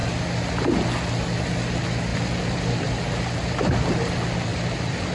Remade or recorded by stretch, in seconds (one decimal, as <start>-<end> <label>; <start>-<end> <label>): 0.0-2.1 recorded; 2.1-2.7 remade; 2.7-4.5 recorded; 4.5-5.1 remade